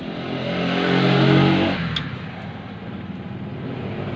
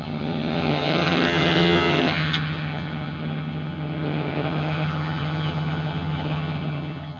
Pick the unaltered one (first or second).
first